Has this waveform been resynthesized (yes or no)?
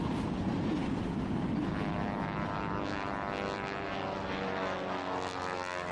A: no